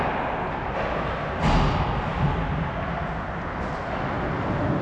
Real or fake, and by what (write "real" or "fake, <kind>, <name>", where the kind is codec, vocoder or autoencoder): real